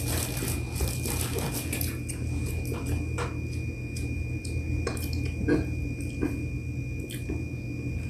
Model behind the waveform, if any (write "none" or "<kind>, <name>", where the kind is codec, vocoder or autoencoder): none